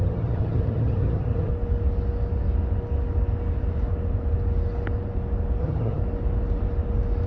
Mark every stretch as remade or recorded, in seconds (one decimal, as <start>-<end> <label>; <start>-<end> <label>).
0.0-1.5 remade; 1.5-5.6 recorded; 5.6-6.0 remade; 6.0-7.3 recorded